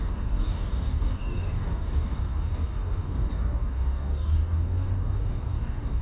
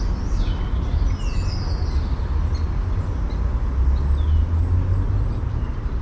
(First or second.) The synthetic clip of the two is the first